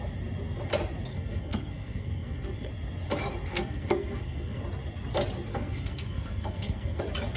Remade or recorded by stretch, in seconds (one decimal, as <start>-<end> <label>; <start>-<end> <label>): 0.0-1.1 recorded; 1.1-2.7 remade; 2.7-3.5 recorded; 3.5-4.6 remade; 4.6-5.5 recorded; 5.5-7.0 remade; 7.0-7.4 recorded

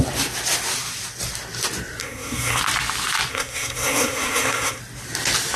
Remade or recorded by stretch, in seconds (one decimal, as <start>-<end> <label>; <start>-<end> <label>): 0.0-2.0 recorded; 2.0-2.6 remade; 2.6-3.3 recorded; 3.3-4.8 remade; 4.8-5.6 recorded

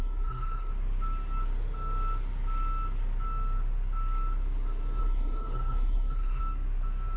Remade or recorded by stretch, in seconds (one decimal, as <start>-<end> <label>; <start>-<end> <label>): 0.0-0.7 remade; 0.7-5.0 recorded; 5.0-6.4 remade; 6.4-7.2 recorded

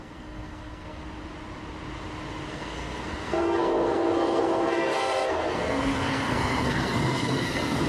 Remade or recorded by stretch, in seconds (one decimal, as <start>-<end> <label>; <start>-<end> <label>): 0.0-1.0 remade; 1.0-2.5 recorded; 2.5-7.9 remade

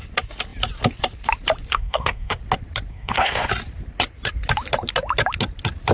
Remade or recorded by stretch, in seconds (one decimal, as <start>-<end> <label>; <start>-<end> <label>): 0.0-1.7 recorded; 1.7-2.4 remade; 2.4-2.9 recorded; 2.9-3.5 remade; 3.5-5.9 recorded

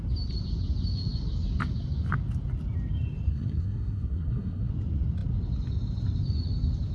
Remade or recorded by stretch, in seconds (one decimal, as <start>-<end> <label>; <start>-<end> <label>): 0.0-3.3 recorded; 3.3-4.7 remade; 4.7-6.9 recorded